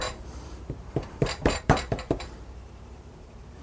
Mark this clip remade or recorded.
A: remade